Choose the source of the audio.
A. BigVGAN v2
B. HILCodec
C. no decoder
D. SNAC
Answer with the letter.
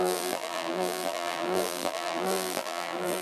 A